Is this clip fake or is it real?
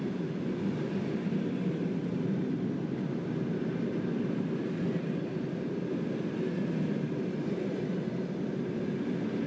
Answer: real